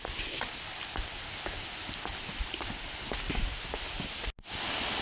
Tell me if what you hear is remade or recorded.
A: recorded